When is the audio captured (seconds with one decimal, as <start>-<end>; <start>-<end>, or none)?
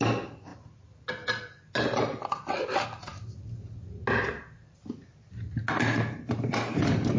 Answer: 0.0-7.2